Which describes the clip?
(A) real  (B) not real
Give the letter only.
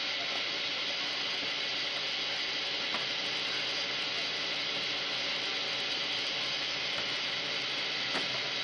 A